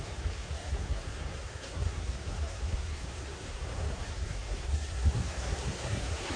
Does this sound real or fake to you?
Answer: fake